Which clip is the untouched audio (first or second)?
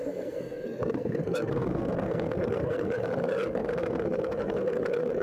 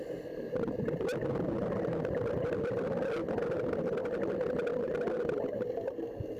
second